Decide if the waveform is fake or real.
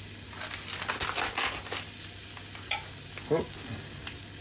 real